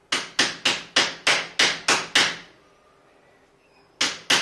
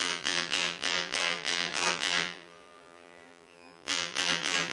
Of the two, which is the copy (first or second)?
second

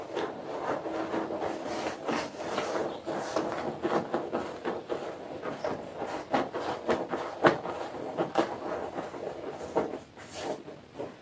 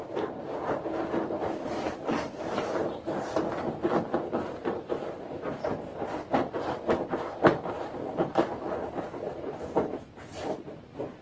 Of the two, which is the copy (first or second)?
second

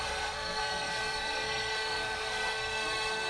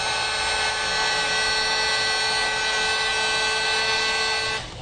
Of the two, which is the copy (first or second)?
first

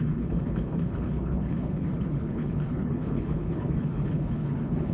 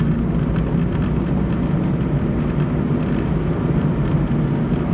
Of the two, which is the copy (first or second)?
first